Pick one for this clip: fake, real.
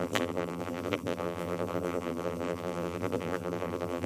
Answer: fake